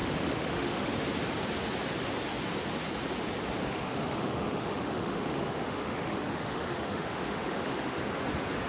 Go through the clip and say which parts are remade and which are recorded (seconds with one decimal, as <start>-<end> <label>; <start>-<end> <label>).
0.0-0.9 remade; 0.9-3.6 recorded; 3.6-8.0 remade; 8.0-8.7 recorded